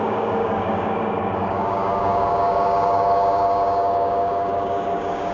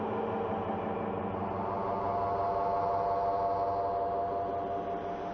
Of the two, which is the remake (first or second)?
first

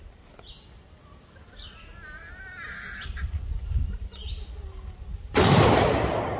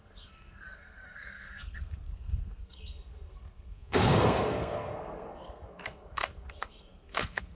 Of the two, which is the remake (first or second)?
second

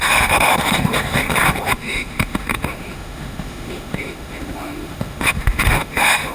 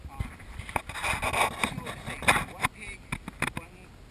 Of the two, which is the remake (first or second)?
first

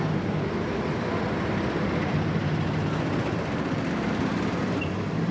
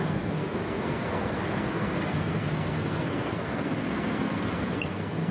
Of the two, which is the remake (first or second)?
second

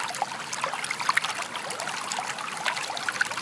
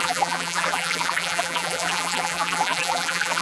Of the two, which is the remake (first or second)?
second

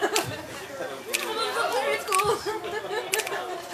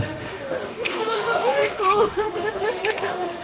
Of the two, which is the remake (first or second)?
second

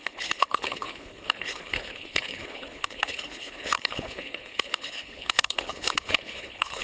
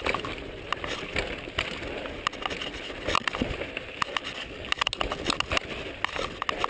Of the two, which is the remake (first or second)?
first